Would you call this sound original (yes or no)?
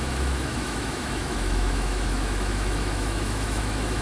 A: no